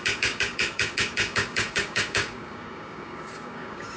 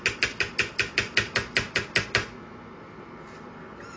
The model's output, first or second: first